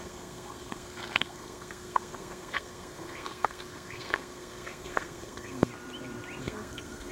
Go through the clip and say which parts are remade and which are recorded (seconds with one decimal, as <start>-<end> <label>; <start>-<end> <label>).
0.0-5.7 remade; 5.7-6.4 recorded; 6.4-7.1 remade